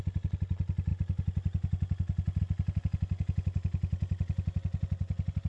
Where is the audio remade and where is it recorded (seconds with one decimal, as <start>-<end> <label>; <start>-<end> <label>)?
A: 0.0-5.5 recorded